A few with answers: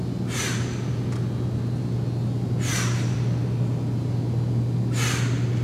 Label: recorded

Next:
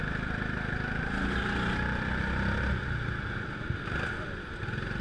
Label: recorded